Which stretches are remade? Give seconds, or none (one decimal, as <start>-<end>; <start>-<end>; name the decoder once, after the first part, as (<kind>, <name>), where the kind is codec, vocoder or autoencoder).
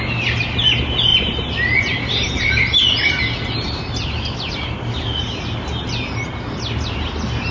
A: none